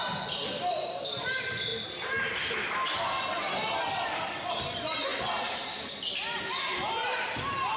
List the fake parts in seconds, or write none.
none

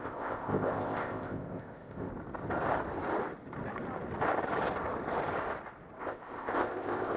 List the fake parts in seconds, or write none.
0.0-2.1 (codec, ZipCodec); 6.0-7.2

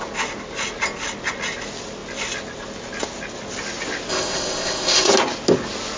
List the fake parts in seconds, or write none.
4.1-5.1 (codec, ZipCodec)

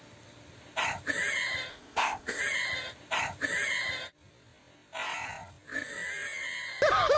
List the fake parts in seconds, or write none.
1.7-2.4 (codec, ZipCodec)

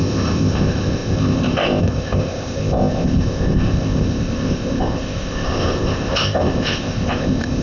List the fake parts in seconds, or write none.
0.0-7.6 (codec, ZipCodec)